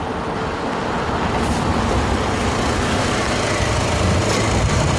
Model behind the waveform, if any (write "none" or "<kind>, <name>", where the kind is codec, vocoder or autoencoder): none